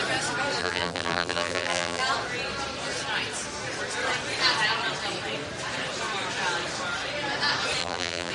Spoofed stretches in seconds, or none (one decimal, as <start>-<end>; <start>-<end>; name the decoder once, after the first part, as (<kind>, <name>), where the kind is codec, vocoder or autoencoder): 0.6-2.0 (vocoder, BigVGAN v2); 7.8-8.3